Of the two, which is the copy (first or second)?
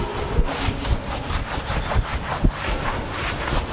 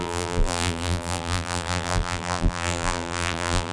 second